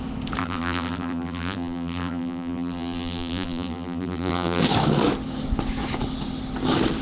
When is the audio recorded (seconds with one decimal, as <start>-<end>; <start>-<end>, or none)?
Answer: 0.0-0.4; 4.6-7.0